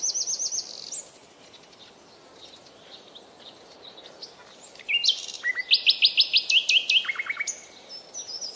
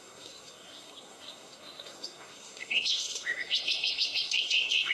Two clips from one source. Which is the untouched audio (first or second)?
first